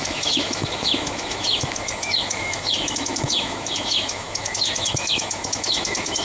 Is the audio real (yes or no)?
no